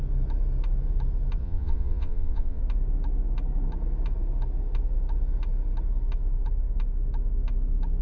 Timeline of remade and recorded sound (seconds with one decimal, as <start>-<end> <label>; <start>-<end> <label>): 0.0-1.4 recorded; 1.4-2.6 remade; 2.6-8.0 recorded